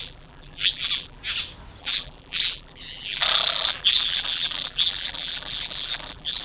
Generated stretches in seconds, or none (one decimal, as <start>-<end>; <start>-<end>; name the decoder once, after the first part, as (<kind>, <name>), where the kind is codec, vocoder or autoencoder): 0.0-1.2 (vocoder, BigVGAN v2); 1.8-6.4